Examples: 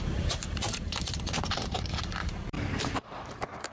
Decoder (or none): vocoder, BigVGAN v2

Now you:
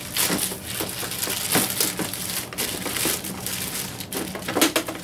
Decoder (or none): none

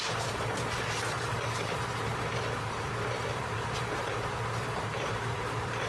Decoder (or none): vocoder, BigVGAN v2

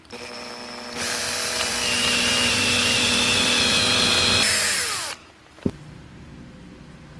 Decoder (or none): vocoder, BigVGAN v2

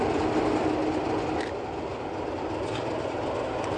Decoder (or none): none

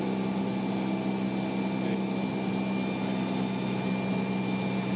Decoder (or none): none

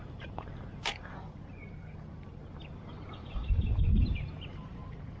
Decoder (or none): vocoder, BigVGAN v2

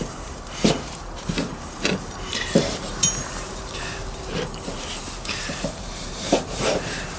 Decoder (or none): vocoder, BigVGAN v2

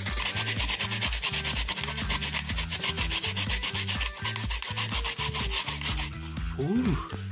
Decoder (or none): none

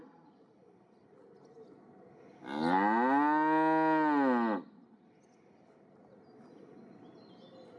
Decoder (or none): none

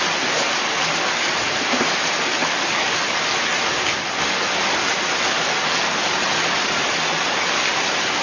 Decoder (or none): none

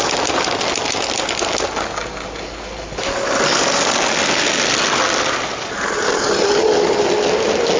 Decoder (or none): none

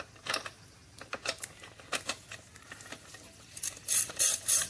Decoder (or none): vocoder, BigVGAN v2